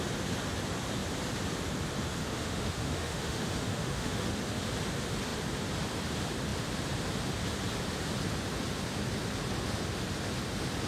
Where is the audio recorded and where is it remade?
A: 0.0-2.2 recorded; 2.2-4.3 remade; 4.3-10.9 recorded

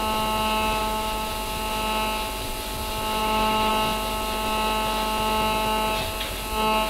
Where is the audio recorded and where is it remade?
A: 0.0-0.8 recorded; 0.8-1.3 remade; 1.3-3.2 recorded; 3.2-3.7 remade; 3.7-6.9 recorded

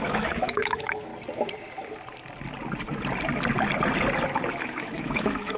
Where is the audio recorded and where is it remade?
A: 0.0-1.1 remade; 1.1-4.5 recorded; 4.5-5.6 remade